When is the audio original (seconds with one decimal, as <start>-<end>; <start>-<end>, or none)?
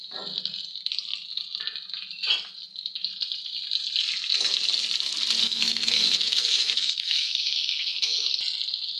0.0-5.4; 8.3-9.0